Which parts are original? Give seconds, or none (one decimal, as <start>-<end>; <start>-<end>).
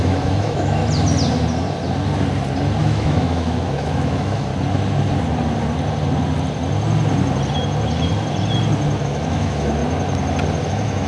0.8-2.8; 4.5-9.0; 9.8-10.7